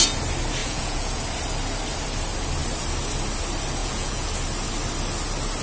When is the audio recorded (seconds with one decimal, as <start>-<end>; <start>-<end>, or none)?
0.0-0.6; 1.2-3.8; 4.3-5.6